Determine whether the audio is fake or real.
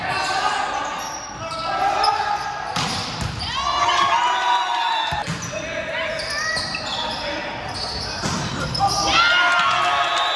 real